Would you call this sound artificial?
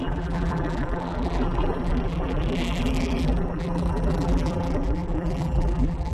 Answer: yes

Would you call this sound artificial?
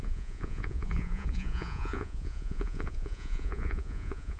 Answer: yes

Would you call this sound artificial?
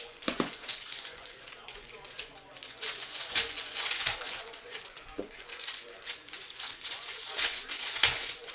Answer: yes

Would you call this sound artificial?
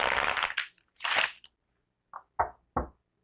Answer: no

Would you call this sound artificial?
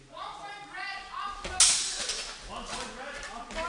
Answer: no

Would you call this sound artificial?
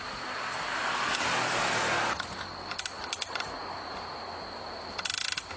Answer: no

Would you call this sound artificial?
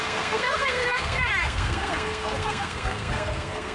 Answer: yes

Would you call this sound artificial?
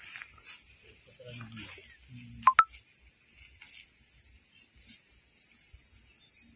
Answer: no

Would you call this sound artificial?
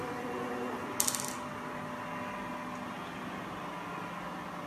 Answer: no